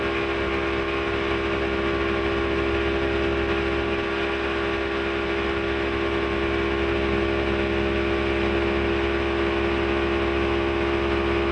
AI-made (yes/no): no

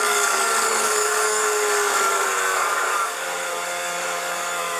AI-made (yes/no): yes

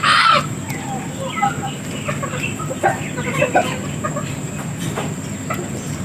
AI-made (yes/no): yes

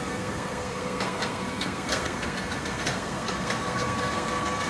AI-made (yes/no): yes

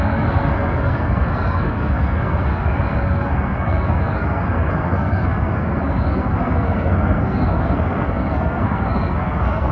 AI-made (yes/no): yes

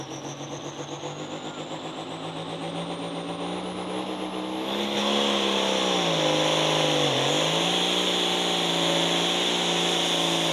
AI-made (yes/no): no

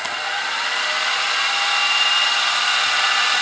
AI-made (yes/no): no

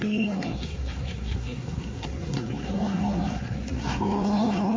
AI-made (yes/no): yes